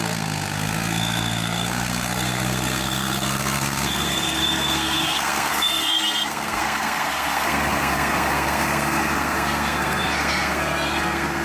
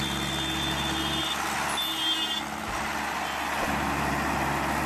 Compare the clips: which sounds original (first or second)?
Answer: second